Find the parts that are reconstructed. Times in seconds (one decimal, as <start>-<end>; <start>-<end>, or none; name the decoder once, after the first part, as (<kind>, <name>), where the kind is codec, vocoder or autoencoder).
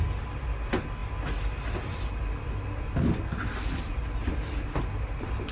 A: none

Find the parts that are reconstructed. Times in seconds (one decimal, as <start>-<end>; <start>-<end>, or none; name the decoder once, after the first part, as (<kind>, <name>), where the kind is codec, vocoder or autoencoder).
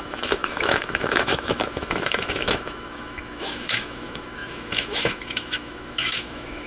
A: 0.0-6.7 (autoencoder, DAC-VAE)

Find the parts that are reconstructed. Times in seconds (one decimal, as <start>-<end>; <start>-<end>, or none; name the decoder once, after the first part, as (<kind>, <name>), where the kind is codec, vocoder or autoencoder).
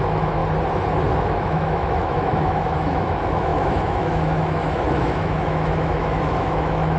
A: 0.0-0.4 (autoencoder, DAC-VAE); 1.1-7.0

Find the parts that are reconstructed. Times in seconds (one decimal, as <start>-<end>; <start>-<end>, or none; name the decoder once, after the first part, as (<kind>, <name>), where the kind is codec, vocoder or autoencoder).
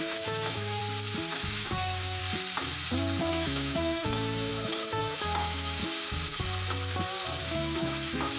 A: 0.0-0.8 (autoencoder, DAC-VAE); 1.3-2.2; 3.3-5.8; 7.4-8.4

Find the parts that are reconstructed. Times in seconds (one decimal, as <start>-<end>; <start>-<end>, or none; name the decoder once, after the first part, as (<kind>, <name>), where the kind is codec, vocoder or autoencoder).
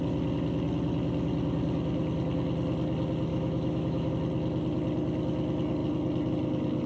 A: 3.3-4.1 (autoencoder, DAC-VAE)